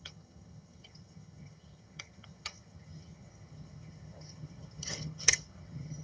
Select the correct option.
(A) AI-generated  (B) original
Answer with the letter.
A